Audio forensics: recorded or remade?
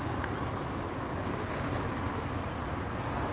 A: recorded